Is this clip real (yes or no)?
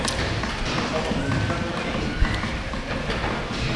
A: yes